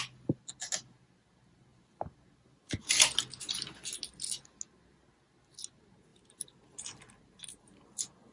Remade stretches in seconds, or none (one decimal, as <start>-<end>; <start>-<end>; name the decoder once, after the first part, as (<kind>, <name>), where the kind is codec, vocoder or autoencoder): none